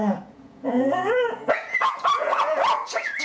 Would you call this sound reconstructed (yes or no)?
yes